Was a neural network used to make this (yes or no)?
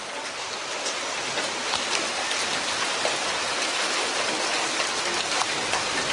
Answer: no